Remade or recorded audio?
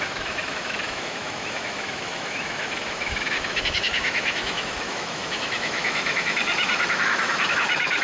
remade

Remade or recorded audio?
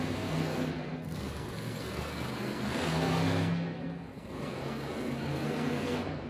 remade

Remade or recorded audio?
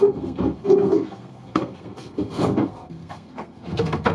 remade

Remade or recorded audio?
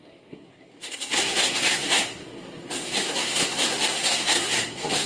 remade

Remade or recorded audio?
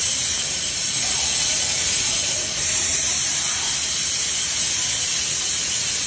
remade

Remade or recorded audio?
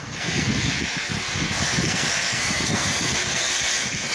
remade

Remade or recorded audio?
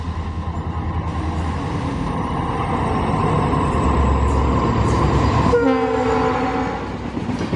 recorded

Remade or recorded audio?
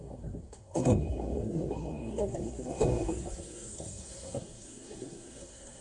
remade